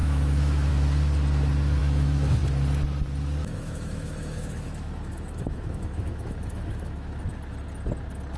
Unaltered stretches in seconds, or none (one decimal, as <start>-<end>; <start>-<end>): 0.7-1.8; 2.4-3.4; 7.2-8.4